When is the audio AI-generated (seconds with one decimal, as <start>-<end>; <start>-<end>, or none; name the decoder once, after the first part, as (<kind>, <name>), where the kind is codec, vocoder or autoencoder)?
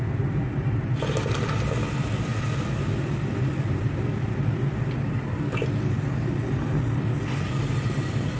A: none